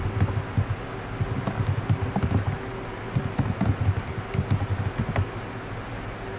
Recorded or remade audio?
recorded